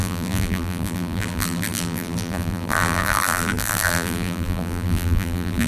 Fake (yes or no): yes